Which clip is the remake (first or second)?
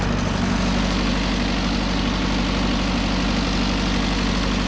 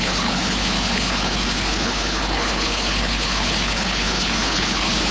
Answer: second